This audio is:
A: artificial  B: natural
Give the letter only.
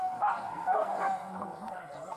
A